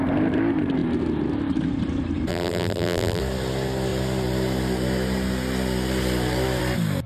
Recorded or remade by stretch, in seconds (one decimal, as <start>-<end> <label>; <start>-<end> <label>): 0.0-2.3 recorded; 2.3-3.2 remade; 3.2-7.1 recorded